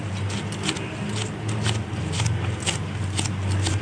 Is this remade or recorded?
recorded